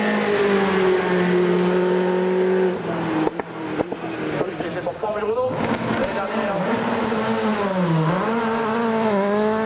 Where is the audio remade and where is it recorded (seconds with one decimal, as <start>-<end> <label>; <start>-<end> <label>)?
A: 0.0-4.9 recorded; 4.9-5.6 remade; 5.6-6.0 recorded; 6.0-7.1 remade; 7.1-7.5 recorded; 7.5-8.1 remade; 8.1-9.7 recorded